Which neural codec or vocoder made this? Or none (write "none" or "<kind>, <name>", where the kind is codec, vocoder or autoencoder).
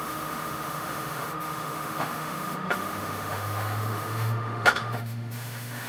autoencoder, DAC-VAE